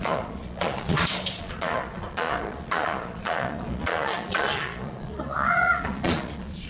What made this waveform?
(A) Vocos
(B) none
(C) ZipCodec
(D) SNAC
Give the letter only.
A